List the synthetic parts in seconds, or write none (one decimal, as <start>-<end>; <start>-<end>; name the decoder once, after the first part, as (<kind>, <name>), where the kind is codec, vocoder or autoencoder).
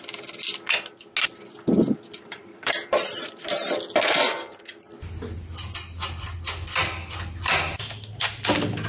2.2-3.4 (vocoder, BigVGAN v2)